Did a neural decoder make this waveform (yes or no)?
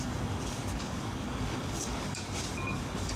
yes